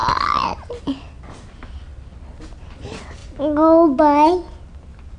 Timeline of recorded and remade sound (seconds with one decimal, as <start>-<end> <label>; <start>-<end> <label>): 0.0-5.2 recorded